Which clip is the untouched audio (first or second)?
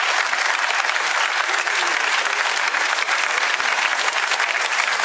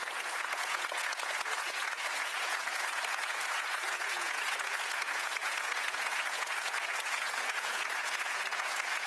first